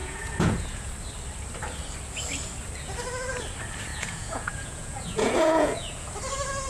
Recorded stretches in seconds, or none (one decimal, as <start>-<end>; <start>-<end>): 0.9-3.9; 6.1-6.7